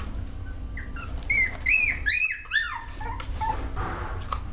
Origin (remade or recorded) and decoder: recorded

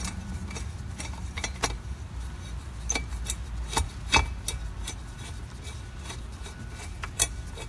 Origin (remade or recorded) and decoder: recorded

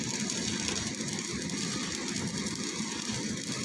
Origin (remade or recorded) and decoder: recorded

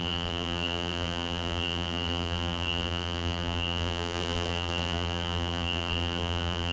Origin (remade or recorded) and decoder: remade, vocoder, BigVGAN v2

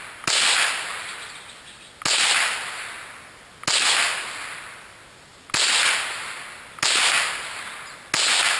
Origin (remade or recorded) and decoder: recorded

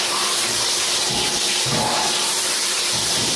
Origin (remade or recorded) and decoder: remade, vocoder, BigVGAN v2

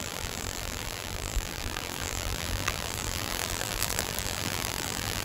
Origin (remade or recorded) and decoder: remade, vocoder, BigVGAN v2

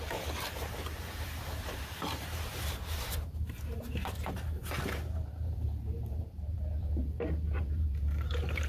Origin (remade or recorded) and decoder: remade, vocoder, BigVGAN v2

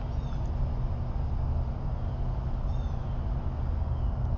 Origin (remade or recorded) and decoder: recorded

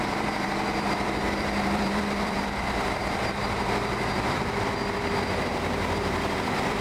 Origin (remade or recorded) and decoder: remade, vocoder, BigVGAN v2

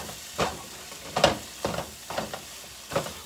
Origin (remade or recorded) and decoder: recorded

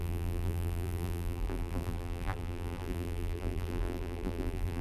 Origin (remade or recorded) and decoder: remade, vocoder, BigVGAN v2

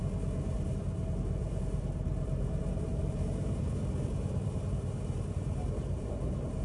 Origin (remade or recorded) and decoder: remade, vocoder, BigVGAN v2